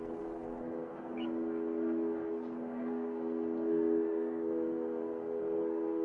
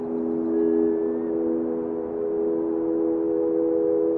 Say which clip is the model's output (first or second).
first